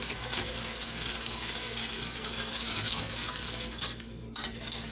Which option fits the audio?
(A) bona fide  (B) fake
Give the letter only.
B